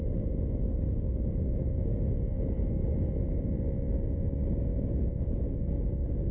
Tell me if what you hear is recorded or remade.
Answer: recorded